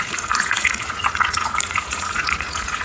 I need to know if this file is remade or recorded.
remade